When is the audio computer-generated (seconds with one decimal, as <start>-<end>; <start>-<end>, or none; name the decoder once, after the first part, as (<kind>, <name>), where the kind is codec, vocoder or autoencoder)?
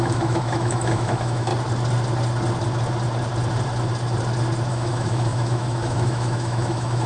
0.0-1.5 (autoencoder, DAC-VAE); 4.7-7.1